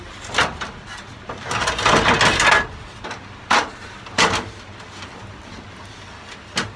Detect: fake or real real